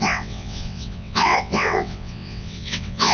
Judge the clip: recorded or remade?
remade